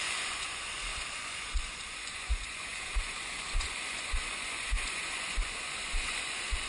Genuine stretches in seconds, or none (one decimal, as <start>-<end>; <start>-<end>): none